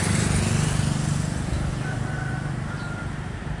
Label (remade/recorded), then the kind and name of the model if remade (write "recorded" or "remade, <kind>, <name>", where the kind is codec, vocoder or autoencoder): remade, vocoder, BigVGAN v2